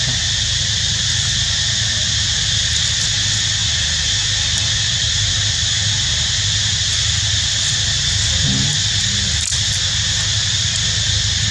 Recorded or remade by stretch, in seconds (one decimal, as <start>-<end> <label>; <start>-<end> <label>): 0.0-11.5 recorded